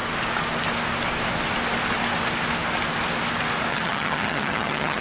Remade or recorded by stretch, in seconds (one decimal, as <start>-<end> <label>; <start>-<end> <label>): 0.0-3.7 recorded; 3.7-5.0 remade